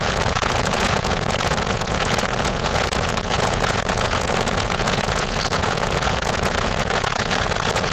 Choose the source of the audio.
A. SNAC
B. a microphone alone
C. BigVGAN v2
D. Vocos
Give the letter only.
D